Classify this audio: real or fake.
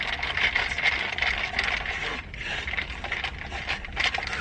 real